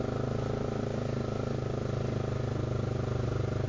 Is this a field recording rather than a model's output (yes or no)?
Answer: yes